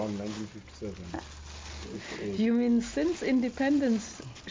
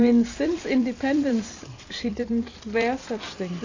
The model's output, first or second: second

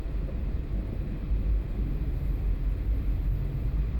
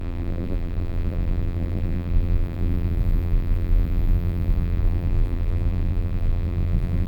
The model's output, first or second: second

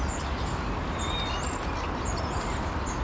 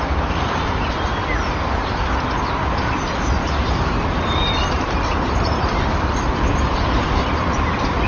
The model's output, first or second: second